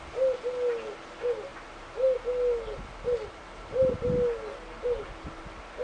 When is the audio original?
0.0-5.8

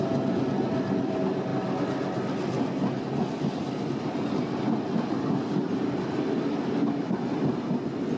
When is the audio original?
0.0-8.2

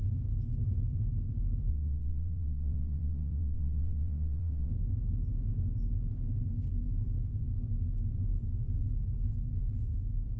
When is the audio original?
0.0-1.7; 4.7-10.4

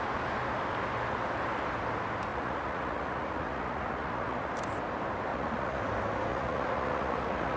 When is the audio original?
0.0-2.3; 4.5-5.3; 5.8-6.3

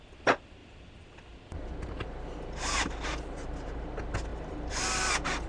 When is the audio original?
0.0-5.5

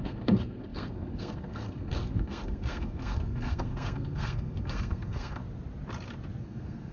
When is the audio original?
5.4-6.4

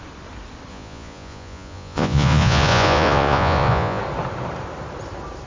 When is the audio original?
0.0-0.7; 4.0-5.5

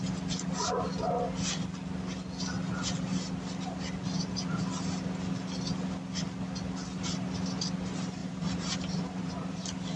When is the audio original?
0.0-8.2; 9.6-10.0